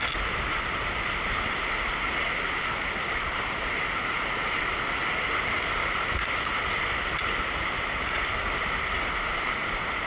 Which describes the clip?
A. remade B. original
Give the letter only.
B